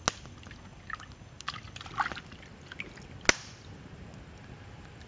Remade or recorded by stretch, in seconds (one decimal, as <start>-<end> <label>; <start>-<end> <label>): 0.0-5.1 recorded